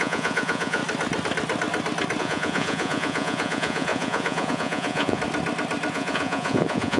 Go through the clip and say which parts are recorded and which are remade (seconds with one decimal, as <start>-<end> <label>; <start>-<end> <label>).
0.0-0.8 remade; 0.8-2.2 recorded; 2.2-5.2 remade; 5.2-5.9 recorded; 5.9-7.0 remade